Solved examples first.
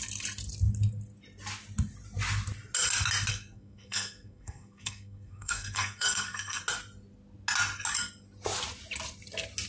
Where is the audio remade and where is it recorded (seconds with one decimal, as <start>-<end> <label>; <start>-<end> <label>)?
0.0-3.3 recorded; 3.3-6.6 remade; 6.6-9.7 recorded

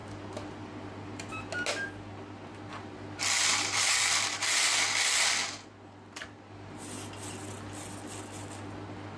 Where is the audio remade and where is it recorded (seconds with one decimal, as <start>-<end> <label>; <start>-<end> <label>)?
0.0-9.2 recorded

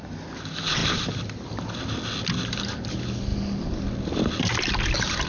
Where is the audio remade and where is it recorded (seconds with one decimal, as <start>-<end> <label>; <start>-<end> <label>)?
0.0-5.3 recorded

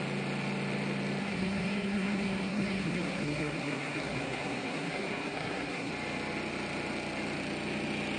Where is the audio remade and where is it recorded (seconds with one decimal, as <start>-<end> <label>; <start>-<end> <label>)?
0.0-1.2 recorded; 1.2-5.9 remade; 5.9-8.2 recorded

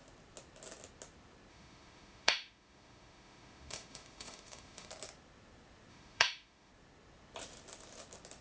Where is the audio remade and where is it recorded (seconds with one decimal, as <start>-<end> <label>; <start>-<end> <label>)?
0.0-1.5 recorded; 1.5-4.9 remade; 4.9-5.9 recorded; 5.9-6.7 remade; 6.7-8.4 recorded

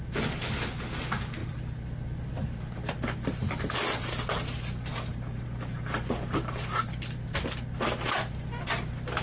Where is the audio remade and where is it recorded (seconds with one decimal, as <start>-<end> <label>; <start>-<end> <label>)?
0.0-9.2 recorded